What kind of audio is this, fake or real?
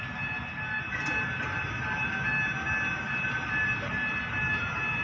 real